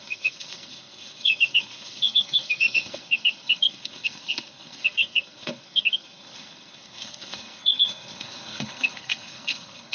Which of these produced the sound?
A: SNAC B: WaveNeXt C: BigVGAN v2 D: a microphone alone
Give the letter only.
A